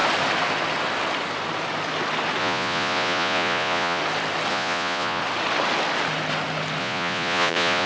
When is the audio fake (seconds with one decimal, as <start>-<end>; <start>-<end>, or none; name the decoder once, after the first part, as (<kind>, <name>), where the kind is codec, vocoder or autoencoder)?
2.4-4.0 (vocoder, Vocos); 4.5-5.2; 6.8-7.9